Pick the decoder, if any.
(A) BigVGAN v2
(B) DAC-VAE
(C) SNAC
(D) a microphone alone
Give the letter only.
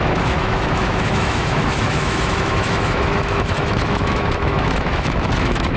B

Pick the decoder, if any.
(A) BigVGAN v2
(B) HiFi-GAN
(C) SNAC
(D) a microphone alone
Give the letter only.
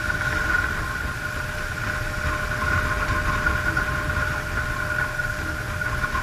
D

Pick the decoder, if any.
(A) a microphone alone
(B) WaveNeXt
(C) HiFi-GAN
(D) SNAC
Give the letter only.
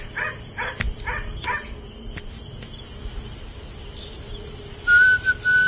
A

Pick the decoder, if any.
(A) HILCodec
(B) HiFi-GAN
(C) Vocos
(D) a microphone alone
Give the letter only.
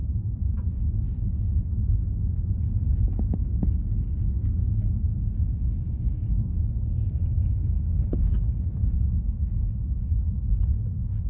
D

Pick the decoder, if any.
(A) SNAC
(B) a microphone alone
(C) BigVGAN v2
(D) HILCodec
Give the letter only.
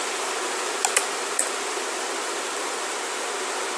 B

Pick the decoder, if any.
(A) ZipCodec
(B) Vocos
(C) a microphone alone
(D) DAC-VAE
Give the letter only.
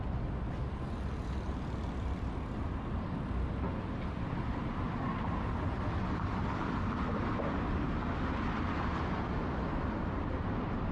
C